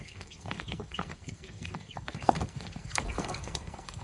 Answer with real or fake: fake